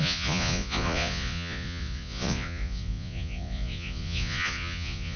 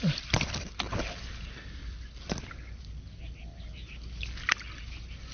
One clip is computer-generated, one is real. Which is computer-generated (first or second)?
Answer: first